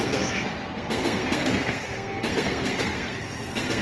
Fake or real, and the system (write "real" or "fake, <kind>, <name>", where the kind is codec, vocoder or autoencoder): fake, codec, SNAC